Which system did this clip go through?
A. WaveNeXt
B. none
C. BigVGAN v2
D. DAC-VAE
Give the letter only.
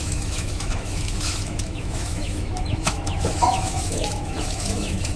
D